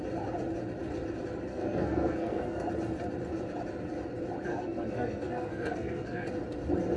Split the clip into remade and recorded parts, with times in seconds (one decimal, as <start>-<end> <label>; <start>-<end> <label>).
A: 0.0-1.5 recorded; 1.5-2.7 remade; 2.7-4.5 recorded; 4.5-6.3 remade; 6.3-7.0 recorded